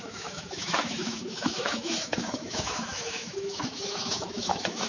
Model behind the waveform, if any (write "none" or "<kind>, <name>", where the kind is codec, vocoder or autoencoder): autoencoder, DAC-VAE